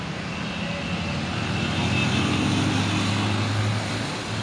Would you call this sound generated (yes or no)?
no